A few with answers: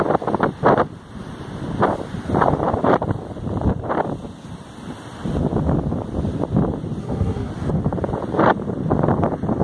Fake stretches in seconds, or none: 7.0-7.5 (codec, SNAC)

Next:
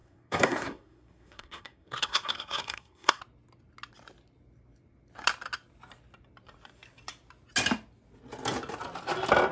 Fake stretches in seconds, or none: 0.0-3.2 (codec, SNAC)

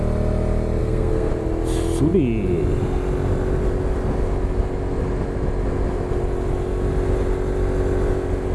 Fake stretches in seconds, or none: 0.8-1.3 (codec, SNAC)

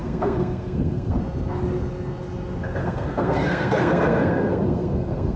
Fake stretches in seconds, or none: 0.0-1.2 (codec, SNAC); 2.8-5.4

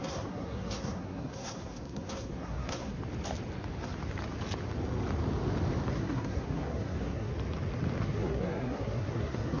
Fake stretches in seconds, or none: 0.0-3.0 (codec, SNAC); 5.9-7.3; 8.0-9.6